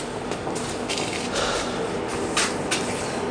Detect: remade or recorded recorded